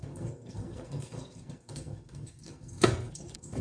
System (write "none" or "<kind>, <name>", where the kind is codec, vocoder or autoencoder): codec, SNAC